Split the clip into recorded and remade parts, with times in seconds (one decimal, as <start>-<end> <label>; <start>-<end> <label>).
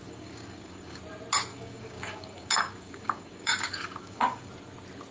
0.0-1.0 remade; 1.0-1.5 recorded; 1.5-4.5 remade; 4.5-5.1 recorded